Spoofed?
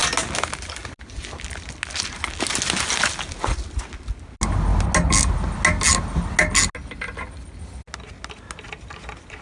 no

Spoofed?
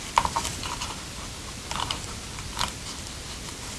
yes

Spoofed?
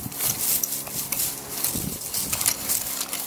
no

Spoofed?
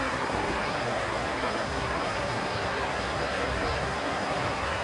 yes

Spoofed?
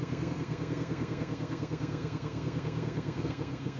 yes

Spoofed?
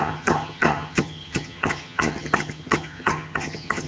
yes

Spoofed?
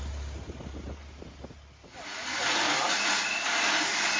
no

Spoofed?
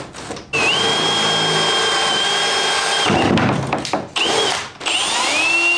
no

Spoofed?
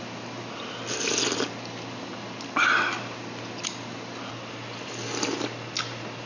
no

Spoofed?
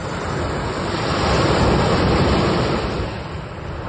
no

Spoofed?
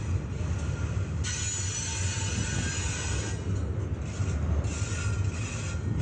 no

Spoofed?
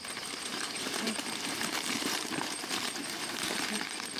yes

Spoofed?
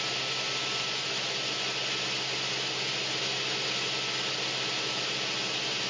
no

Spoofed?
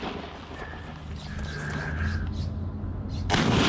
no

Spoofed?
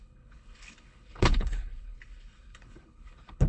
yes